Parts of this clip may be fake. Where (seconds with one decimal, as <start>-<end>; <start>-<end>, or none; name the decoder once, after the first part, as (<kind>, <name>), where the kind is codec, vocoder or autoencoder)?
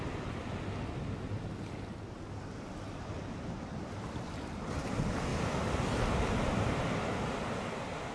none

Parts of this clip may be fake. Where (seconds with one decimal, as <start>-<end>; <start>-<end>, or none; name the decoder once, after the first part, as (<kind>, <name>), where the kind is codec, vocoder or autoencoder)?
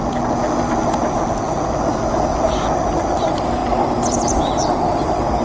none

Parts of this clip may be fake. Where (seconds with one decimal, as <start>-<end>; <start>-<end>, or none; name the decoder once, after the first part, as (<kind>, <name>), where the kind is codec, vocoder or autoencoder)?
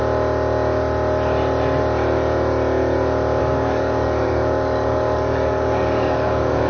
3.4-6.7 (codec, DAC)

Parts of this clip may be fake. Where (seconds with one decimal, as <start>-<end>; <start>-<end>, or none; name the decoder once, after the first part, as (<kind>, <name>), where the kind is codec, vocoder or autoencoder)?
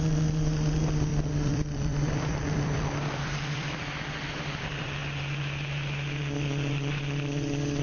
0.0-5.0 (vocoder, BigVGAN v2); 6.7-7.8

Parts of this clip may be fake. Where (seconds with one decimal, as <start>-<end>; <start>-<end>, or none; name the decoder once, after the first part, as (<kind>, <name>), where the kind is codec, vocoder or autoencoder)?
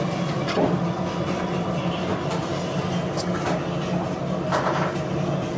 none